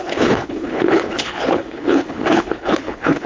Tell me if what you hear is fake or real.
fake